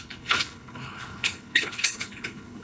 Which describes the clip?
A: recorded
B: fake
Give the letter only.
B